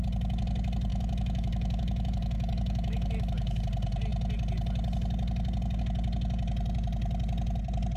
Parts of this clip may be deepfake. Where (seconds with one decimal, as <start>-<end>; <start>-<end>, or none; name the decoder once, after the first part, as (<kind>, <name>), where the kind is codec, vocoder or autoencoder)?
0.9-3.6 (autoencoder, DAC-VAE)